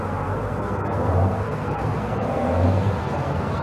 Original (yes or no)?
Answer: no